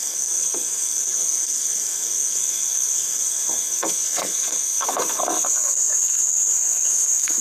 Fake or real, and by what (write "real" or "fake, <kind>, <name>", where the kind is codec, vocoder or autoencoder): fake, codec, SNAC